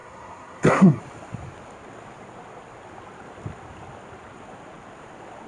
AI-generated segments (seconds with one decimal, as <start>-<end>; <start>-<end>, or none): 0.0-1.0